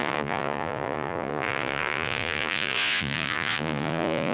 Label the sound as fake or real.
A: fake